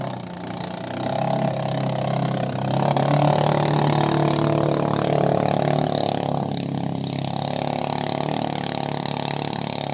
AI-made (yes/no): no